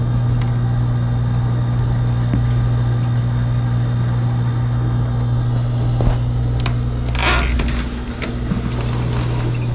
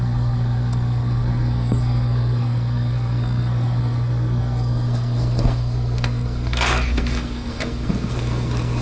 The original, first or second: first